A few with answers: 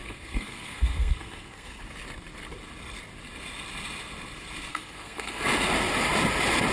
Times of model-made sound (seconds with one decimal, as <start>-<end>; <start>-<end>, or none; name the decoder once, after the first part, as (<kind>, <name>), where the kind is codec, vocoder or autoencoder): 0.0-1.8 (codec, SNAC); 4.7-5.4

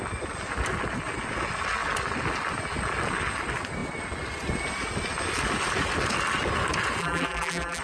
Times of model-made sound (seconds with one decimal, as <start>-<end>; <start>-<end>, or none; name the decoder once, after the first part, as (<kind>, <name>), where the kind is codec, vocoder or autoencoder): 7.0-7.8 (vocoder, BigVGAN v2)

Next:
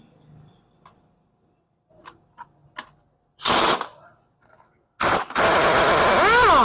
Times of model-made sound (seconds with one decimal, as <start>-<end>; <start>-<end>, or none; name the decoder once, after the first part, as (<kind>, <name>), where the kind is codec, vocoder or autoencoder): none

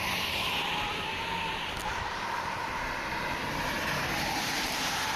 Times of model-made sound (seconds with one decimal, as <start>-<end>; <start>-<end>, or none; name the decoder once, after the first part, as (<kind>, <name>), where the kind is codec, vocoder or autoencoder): 0.0-0.7 (vocoder, BigVGAN v2); 3.8-5.2